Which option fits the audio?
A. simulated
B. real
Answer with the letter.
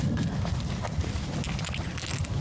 B